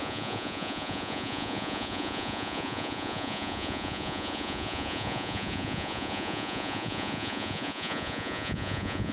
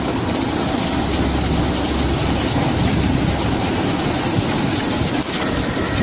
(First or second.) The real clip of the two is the second